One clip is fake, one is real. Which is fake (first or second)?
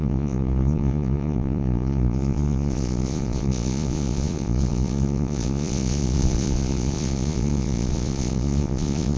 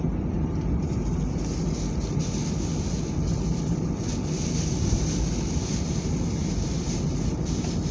first